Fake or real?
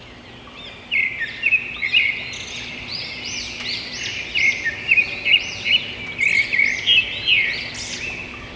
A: real